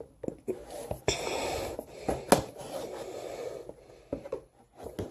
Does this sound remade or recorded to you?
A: recorded